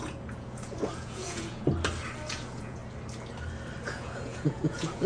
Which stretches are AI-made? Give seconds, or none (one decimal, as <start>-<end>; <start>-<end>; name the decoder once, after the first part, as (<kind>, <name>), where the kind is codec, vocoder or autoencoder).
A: 0.0-1.7 (vocoder, Vocos); 2.3-2.8; 3.8-5.1